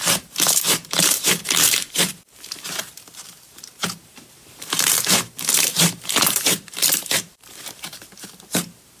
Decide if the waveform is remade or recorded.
remade